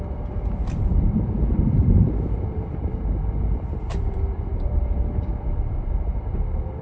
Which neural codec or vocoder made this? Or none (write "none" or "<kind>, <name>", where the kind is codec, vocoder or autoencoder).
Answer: vocoder, BigVGAN v2